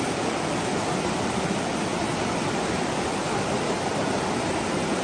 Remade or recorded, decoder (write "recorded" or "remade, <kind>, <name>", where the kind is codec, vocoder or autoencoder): recorded